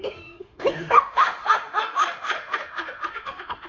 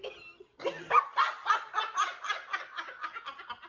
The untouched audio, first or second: second